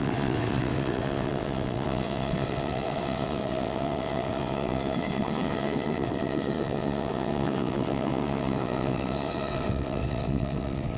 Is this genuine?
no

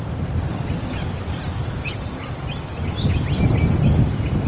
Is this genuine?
yes